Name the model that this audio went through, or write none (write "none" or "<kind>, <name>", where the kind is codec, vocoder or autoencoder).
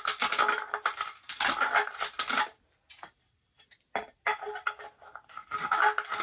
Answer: none